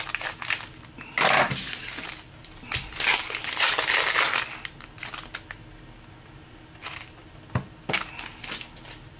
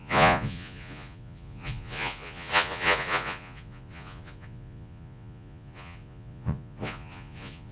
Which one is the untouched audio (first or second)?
first